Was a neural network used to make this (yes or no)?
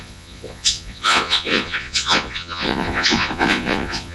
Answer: yes